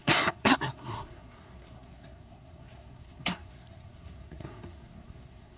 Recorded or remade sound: remade